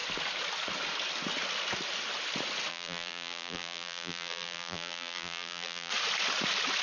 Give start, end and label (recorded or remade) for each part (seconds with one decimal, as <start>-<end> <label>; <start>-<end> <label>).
0.0-2.7 recorded; 2.7-5.9 remade; 5.9-6.8 recorded